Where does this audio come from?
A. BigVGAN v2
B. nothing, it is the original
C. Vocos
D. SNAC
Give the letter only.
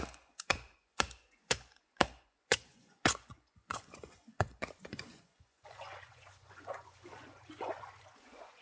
C